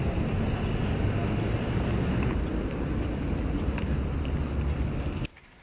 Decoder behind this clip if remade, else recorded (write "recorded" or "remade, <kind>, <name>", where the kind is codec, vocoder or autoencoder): recorded